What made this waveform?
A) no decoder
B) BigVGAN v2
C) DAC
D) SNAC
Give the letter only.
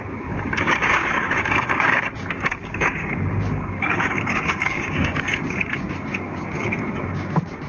C